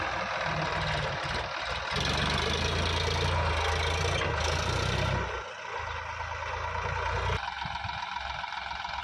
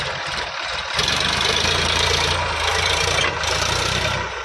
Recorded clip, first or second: first